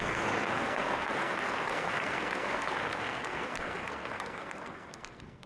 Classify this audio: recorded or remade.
remade